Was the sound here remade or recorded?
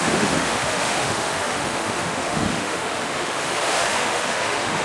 remade